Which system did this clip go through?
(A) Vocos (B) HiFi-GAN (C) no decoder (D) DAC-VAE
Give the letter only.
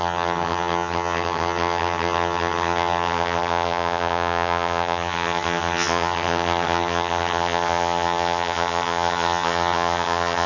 B